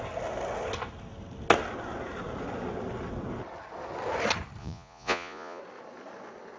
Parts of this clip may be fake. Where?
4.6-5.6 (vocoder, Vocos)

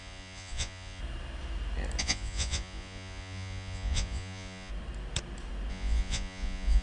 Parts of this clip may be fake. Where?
0.0-1.0 (vocoder, Vocos); 2.0-4.7; 5.7-6.8

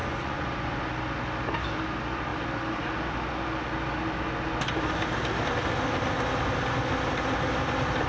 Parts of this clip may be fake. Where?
0.0-0.8 (vocoder, Vocos)

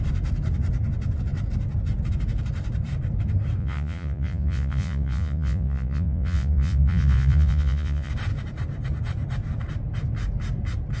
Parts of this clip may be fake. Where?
3.6-8.1 (vocoder, Vocos)

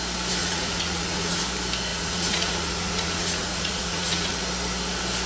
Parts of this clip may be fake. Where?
0.4-1.4 (vocoder, Vocos); 1.9-4.4

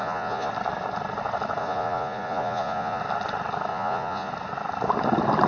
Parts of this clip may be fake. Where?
0.0-0.5 (vocoder, Vocos); 1.6-3.0; 3.7-4.3